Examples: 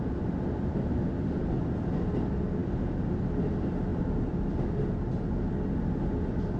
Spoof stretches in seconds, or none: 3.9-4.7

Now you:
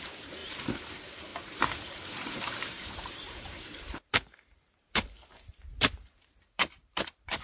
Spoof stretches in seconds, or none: 0.0-0.4; 0.9-7.4

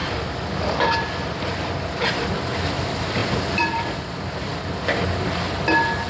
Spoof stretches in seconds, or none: 3.2-4.0

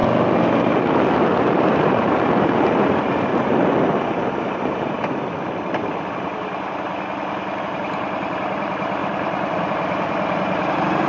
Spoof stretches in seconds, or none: 1.1-3.3; 7.6-11.1

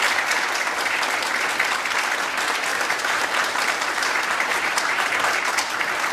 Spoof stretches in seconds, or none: 2.7-5.5

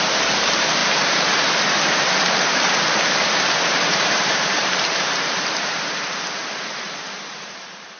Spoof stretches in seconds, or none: 0.0-8.0